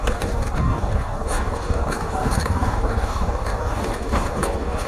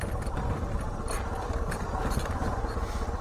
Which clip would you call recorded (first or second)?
second